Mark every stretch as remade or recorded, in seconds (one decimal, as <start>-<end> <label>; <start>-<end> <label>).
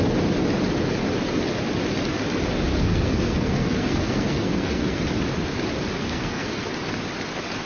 0.0-2.7 recorded; 2.7-5.0 remade; 5.0-6.0 recorded; 6.0-6.7 remade; 6.7-7.7 recorded